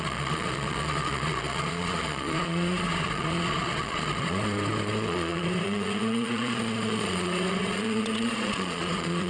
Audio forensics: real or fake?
fake